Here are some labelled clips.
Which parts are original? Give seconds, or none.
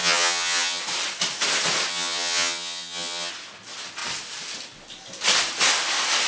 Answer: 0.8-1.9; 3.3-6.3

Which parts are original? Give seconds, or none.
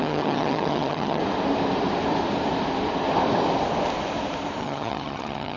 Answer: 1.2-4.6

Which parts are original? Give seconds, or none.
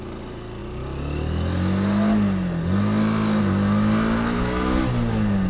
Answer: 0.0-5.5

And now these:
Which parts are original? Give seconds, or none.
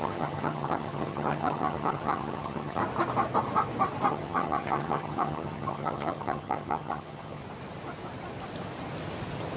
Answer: 2.8-4.1; 7.4-9.6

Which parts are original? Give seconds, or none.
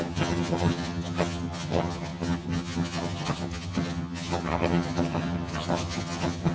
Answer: none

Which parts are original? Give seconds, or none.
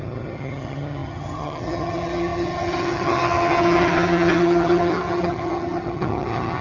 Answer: none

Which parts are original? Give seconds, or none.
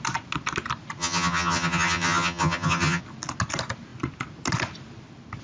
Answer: 0.0-1.0; 3.0-5.4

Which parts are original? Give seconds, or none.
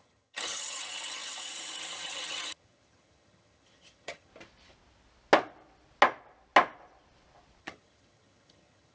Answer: 4.3-7.6